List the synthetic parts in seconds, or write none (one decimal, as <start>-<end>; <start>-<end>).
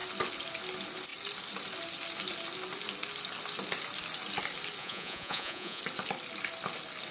4.8-5.8